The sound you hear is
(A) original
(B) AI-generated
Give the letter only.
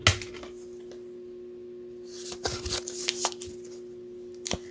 A